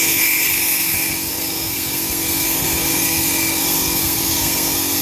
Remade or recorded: remade